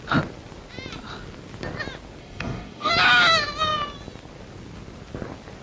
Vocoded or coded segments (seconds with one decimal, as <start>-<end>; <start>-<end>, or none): 2.2-2.9